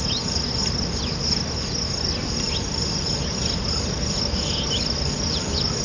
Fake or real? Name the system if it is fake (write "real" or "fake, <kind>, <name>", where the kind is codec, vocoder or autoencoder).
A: real